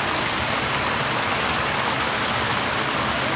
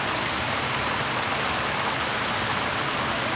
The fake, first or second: second